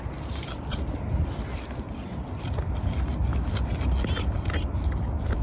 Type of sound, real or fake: real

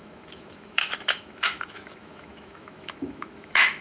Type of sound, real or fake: fake